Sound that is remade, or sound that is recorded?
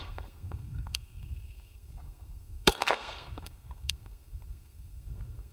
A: remade